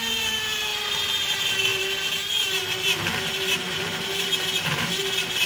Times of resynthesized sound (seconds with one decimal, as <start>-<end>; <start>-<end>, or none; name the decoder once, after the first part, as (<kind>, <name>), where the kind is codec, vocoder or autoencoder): 0.0-5.5 (vocoder, BigVGAN v2)